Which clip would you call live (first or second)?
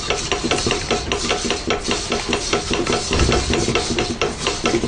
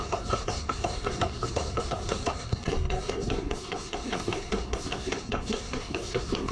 first